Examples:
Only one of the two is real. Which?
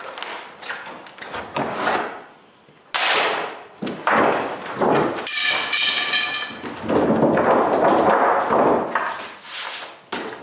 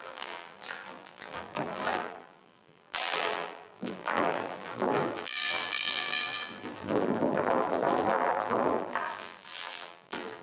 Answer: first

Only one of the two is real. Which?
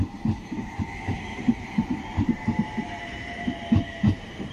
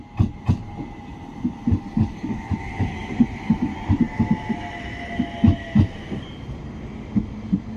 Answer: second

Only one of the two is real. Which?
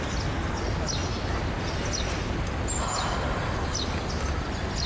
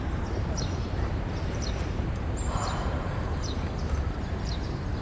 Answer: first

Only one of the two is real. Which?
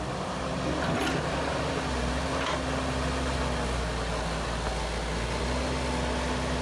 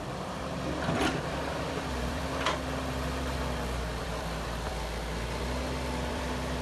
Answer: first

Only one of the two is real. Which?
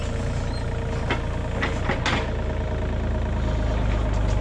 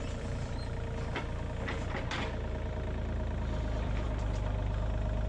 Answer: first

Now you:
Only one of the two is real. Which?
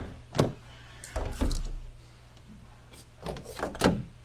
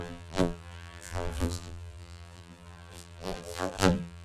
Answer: first